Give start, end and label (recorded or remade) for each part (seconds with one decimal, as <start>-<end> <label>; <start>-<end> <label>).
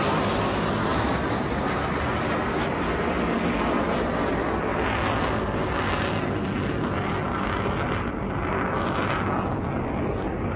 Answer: 0.0-0.9 recorded; 0.9-2.1 remade; 2.1-10.6 recorded